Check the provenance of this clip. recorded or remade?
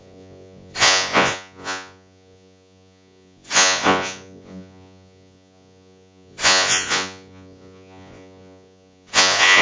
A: remade